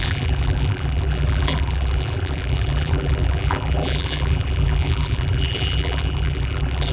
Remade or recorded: remade